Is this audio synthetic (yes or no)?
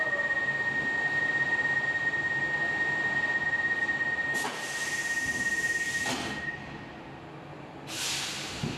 no